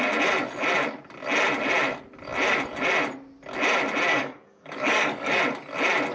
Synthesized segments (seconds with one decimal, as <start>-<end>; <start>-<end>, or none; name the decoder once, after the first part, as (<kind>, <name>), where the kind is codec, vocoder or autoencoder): 4.1-5.4 (codec, DAC)